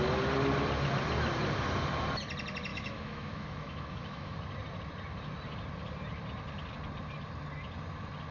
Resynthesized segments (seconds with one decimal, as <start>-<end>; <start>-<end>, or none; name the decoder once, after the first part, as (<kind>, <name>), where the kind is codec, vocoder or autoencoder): 2.7-4.4 (autoencoder, DAC-VAE)